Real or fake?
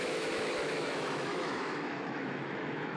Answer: fake